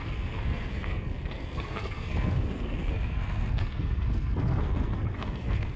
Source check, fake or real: fake